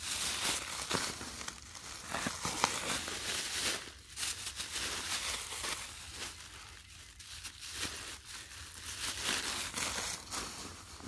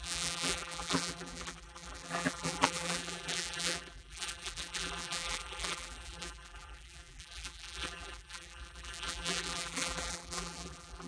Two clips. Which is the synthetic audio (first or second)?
second